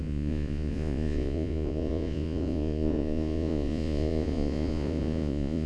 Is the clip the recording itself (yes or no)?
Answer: no